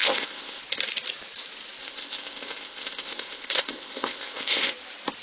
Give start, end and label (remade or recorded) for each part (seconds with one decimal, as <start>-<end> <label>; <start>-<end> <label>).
0.0-0.6 remade; 0.6-1.8 recorded; 1.8-4.7 remade; 4.7-5.2 recorded